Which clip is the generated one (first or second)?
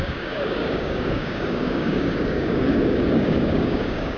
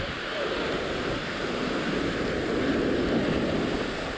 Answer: first